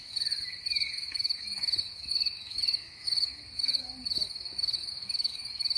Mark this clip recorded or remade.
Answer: remade